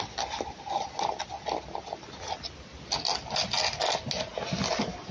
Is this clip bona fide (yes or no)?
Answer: yes